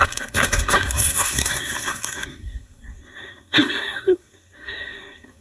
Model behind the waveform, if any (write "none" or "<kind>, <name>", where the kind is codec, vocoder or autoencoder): codec, SNAC